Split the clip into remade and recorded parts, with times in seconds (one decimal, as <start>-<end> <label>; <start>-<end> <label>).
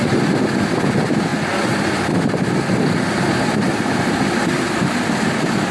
0.0-1.3 recorded; 1.3-4.7 remade; 4.7-5.7 recorded